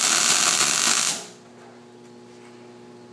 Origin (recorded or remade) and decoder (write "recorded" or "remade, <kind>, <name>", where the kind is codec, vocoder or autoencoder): recorded